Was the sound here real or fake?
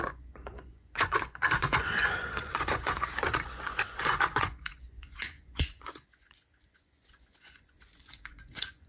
fake